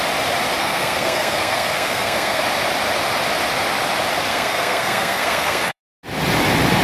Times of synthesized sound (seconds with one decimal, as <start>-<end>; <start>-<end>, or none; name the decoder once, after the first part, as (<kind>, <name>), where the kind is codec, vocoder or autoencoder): 0.6-2.4 (codec, SNAC); 4.3-5.8